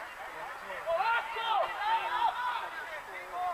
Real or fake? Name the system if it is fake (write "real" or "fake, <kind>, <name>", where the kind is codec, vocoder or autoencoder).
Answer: real